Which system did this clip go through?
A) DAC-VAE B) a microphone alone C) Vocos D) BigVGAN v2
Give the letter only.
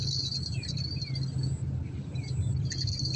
B